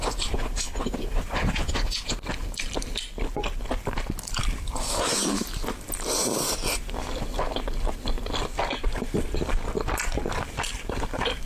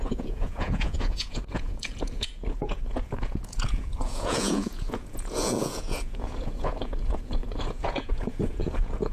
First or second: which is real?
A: first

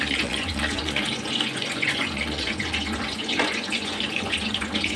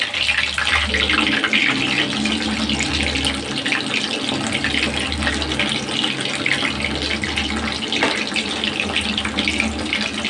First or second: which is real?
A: second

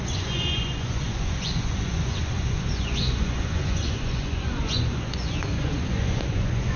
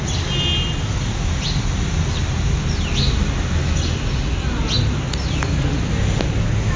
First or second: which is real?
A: second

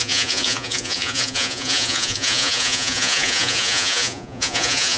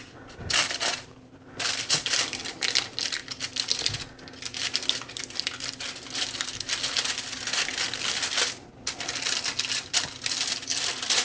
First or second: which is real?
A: second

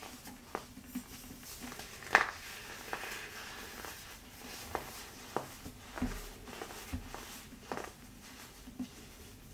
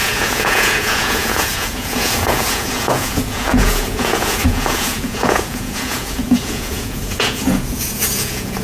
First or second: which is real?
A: first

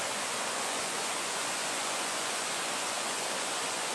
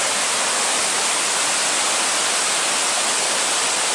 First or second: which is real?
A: second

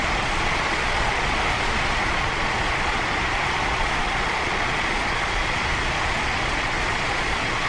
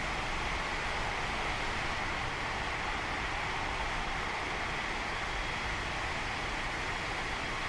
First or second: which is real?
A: second